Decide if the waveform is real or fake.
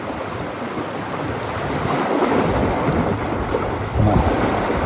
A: real